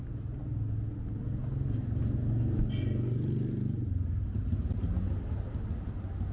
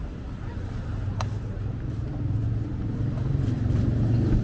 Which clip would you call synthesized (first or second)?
second